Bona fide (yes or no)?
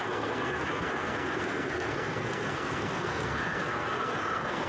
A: no